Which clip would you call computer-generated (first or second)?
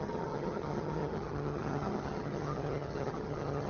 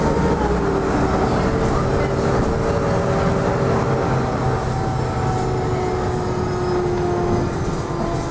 first